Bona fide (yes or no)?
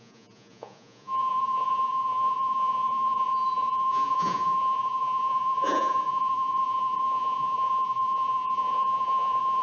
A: no